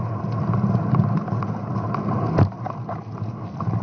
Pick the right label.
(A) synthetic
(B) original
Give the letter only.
B